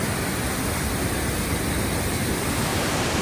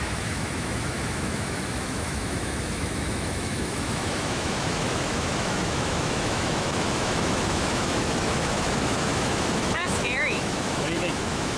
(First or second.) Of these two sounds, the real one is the first